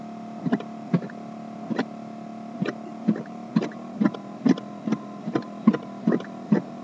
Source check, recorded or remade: recorded